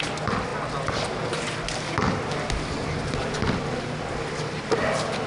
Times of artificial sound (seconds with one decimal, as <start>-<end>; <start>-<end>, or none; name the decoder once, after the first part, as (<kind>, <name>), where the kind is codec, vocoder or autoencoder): none